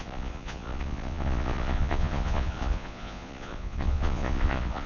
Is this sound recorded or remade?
remade